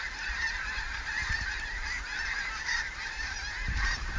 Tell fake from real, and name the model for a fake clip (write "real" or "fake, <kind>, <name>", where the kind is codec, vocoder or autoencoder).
fake, vocoder, BigVGAN v2